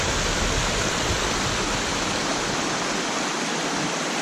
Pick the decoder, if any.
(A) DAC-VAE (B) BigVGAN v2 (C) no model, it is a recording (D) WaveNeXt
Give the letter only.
C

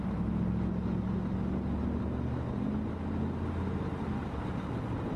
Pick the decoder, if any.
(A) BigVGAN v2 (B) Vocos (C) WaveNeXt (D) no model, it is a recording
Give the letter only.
D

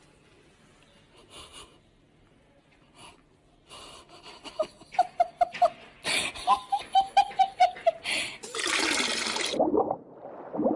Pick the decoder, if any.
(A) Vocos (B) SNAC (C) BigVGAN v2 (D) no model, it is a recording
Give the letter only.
D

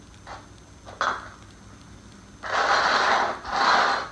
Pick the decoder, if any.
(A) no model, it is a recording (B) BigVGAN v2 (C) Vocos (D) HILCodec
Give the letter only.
A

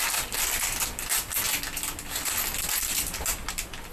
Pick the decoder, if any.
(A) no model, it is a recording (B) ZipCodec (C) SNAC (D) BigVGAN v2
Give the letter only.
A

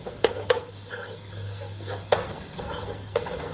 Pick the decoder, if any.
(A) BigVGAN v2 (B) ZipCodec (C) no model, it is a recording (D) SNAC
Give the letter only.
D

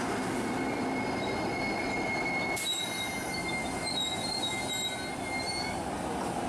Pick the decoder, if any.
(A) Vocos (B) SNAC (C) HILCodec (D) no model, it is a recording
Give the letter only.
D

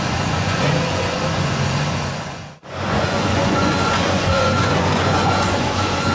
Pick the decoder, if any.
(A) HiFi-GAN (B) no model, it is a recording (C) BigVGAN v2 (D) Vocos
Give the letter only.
D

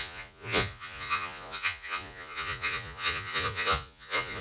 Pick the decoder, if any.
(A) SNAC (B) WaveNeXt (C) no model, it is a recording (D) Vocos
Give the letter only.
D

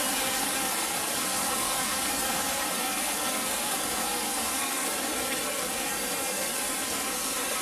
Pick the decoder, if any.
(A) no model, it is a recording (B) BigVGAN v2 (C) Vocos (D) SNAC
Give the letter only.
D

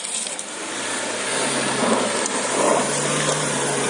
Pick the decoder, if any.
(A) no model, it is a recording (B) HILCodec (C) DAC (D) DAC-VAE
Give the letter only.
A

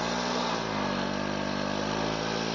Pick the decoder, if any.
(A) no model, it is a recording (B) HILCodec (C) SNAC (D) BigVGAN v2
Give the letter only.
A